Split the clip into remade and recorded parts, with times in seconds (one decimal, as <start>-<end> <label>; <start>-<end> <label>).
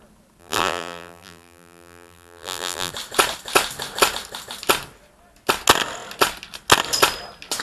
0.0-0.4 recorded; 0.4-2.9 remade; 2.9-7.6 recorded